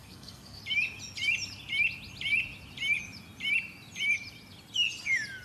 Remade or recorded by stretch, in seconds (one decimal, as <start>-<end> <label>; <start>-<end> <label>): 0.0-0.6 remade; 0.6-5.4 recorded